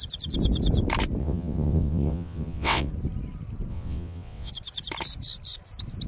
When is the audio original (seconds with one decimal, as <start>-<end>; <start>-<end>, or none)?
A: 0.0-1.2; 2.9-3.7; 4.5-6.1